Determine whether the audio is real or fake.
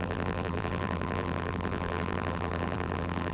fake